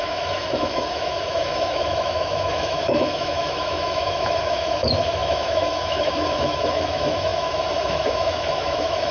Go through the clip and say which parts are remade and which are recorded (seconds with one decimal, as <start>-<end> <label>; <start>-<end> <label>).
0.0-9.1 remade